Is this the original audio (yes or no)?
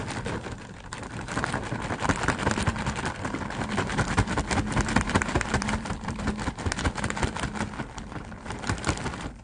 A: no